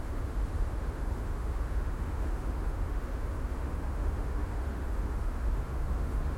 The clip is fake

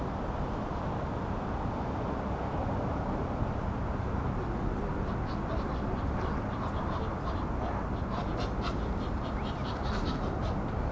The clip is real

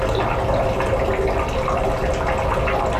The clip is real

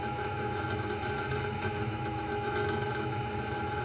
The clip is fake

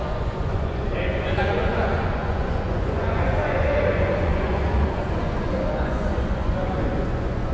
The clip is fake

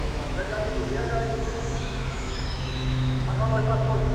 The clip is fake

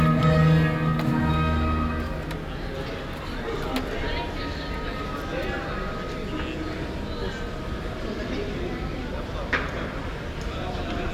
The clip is real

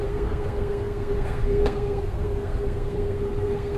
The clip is fake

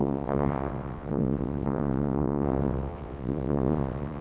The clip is fake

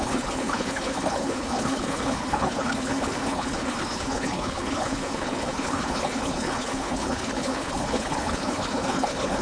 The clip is fake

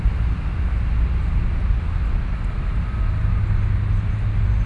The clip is real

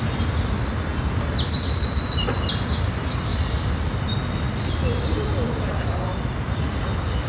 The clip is real